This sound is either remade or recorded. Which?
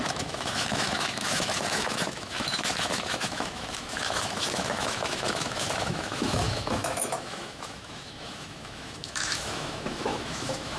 remade